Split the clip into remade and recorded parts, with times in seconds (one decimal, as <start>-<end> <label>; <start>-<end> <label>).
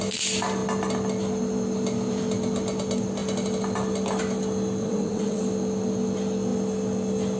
0.0-4.8 recorded; 4.8-5.4 remade; 5.4-7.4 recorded